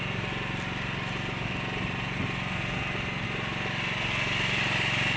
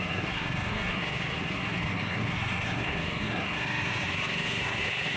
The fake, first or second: second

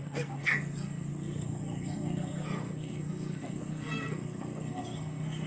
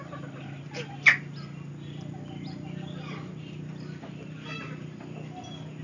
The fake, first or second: first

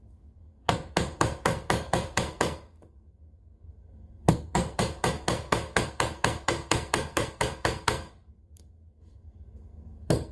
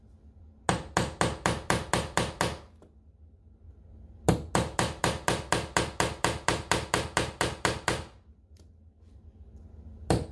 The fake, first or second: first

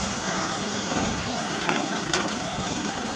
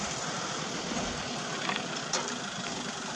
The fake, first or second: first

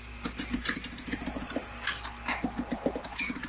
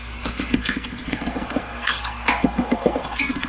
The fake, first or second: second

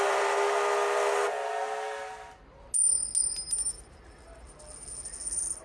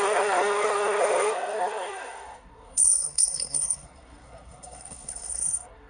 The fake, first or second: second